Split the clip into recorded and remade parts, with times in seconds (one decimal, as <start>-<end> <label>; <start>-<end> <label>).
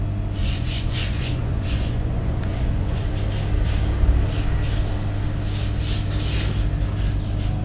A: 0.0-0.4 recorded; 0.4-3.1 remade; 3.1-7.6 recorded